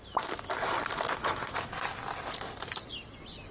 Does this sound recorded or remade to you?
recorded